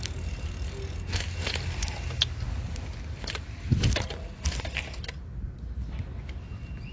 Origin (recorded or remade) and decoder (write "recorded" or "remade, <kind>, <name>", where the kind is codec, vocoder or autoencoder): recorded